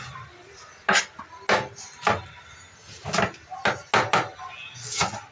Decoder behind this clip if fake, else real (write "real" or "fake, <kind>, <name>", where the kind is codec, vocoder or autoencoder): real